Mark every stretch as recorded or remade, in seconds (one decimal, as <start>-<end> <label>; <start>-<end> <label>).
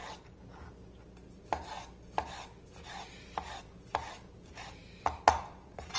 0.0-3.6 recorded; 3.6-4.8 remade; 4.8-5.4 recorded; 5.4-6.0 remade